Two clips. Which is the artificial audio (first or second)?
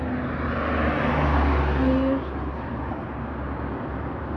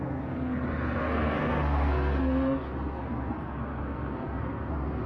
second